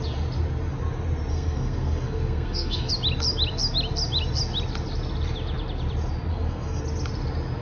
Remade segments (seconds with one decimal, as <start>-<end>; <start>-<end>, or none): 1.3-2.9; 6.3-6.8

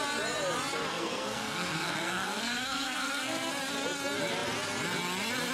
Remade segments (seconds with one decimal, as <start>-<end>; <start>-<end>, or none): 0.9-3.5

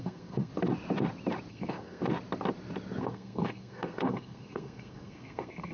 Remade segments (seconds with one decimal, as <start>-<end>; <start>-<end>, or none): 0.0-0.5; 1.5-2.0; 3.0-5.7

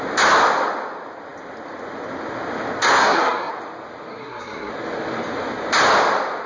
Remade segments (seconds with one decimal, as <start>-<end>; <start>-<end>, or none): 3.0-3.5; 4.1-4.7

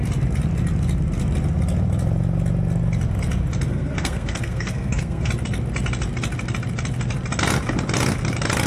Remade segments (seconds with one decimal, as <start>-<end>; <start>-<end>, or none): 3.7-5.3

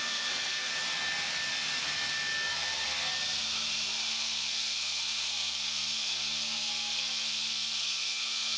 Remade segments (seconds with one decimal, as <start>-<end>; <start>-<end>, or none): 0.0-0.7; 4.1-8.6

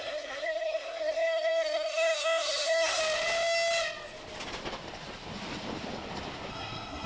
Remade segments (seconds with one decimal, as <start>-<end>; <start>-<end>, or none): 0.0-3.0; 6.5-7.1